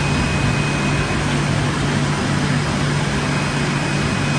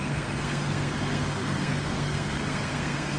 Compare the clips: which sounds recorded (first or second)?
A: first